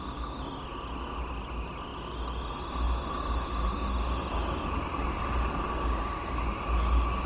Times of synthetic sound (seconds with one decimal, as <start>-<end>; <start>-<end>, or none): none